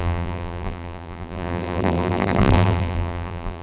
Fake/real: fake